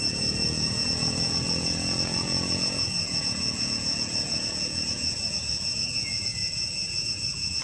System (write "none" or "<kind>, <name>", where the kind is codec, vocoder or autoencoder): vocoder, Vocos